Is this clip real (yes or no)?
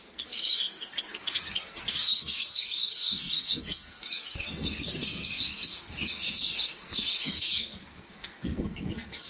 no